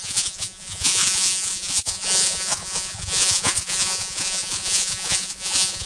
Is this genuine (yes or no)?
no